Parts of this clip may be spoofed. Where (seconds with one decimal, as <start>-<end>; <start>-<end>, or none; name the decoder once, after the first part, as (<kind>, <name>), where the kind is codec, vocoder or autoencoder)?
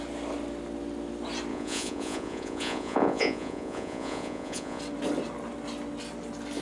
1.5-4.8 (vocoder, Vocos)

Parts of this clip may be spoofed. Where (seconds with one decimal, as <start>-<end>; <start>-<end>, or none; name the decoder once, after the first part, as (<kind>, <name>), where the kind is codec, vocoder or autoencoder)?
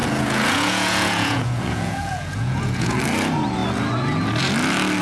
0.0-3.0 (vocoder, Vocos)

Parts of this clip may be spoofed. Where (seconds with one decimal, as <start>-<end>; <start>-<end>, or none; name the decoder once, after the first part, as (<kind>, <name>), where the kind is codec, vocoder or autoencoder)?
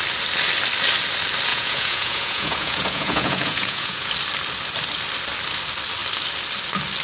1.5-4.1 (vocoder, Vocos)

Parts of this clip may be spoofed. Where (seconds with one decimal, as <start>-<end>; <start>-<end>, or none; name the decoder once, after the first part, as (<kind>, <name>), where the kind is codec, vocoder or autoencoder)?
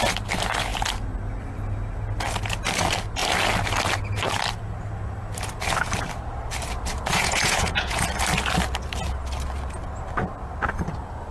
7.1-8.0 (vocoder, Vocos)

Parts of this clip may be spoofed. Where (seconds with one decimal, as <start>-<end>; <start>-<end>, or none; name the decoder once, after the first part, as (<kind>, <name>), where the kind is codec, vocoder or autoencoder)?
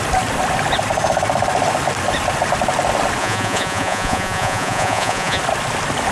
3.2-5.4 (vocoder, Vocos)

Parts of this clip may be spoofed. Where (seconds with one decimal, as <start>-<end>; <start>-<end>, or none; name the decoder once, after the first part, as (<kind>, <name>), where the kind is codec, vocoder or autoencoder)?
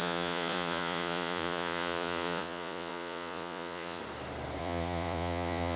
0.0-4.0 (vocoder, Vocos); 4.6-5.8